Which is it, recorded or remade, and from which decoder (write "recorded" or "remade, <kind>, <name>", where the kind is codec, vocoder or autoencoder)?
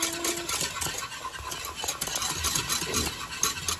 recorded